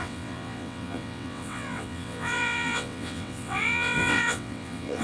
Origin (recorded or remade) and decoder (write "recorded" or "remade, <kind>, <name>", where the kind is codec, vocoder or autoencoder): remade, vocoder, WaveNeXt